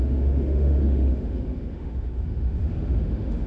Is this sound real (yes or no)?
no